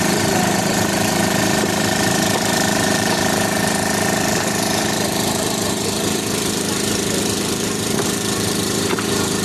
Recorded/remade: remade